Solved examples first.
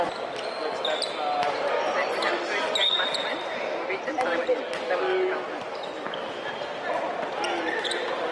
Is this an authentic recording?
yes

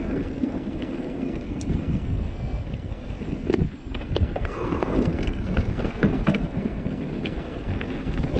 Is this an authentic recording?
no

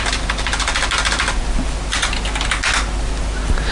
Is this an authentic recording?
yes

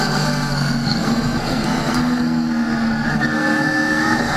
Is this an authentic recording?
no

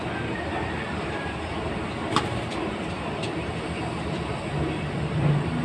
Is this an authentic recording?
yes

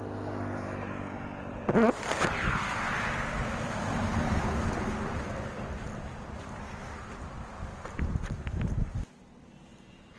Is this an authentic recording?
yes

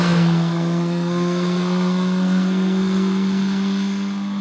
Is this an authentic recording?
no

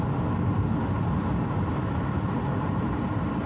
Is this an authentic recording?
yes